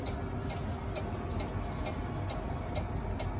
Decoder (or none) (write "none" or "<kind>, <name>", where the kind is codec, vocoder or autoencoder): none